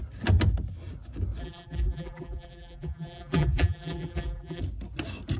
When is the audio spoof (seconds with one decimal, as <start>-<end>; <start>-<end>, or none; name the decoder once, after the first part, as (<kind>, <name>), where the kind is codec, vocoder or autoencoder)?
1.4-4.6 (vocoder, BigVGAN v2)